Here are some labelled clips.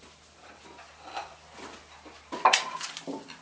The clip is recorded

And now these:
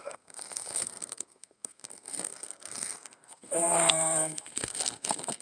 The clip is remade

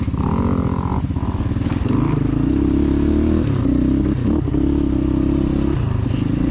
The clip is recorded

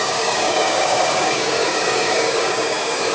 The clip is remade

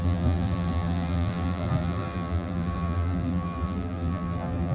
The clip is remade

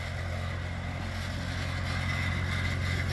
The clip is recorded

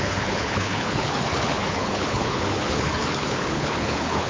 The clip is remade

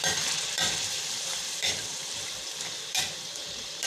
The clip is remade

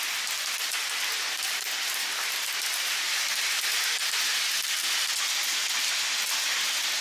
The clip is recorded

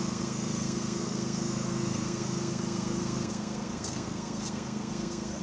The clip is remade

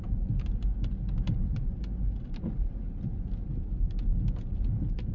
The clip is recorded